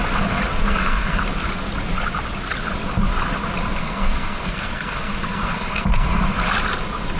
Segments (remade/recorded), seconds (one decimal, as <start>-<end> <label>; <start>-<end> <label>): 0.0-0.6 recorded; 0.6-1.2 remade; 1.2-3.8 recorded; 3.8-6.2 remade; 6.2-7.2 recorded